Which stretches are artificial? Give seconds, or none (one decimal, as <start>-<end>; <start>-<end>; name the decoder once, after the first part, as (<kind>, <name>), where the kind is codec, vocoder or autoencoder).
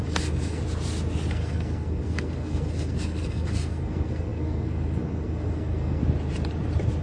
0.0-0.6 (codec, SNAC); 1.3-6.0